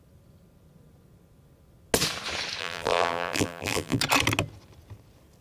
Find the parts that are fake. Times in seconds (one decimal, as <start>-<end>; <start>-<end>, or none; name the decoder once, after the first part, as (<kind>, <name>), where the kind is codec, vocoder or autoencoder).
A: 2.6-4.0 (vocoder, BigVGAN v2)